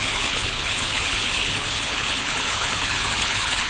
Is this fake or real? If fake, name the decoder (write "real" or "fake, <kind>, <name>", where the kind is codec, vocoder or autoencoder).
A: fake, codec, HILCodec